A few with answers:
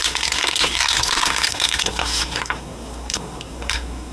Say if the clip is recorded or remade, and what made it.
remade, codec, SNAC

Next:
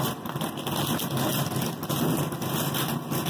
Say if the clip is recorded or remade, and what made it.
recorded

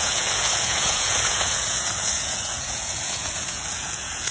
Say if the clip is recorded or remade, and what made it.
remade, vocoder, Vocos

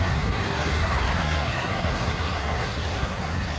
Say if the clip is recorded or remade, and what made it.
remade, codec, SNAC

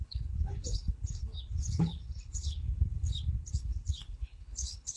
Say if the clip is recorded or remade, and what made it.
remade, codec, HILCodec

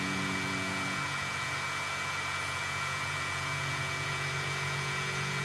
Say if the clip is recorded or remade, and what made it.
remade, vocoder, Vocos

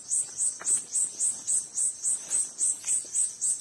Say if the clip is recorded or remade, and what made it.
recorded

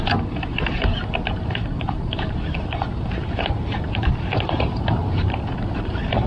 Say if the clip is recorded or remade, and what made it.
remade, vocoder, BigVGAN v2